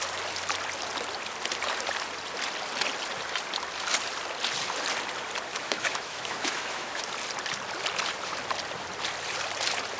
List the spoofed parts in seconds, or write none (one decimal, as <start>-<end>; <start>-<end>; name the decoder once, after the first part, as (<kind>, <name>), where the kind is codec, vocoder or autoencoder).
5.5-7.0 (autoencoder, DAC-VAE)